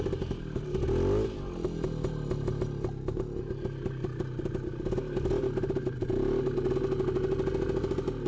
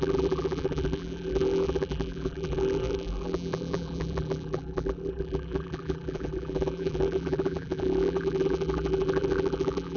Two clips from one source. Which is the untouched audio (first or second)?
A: first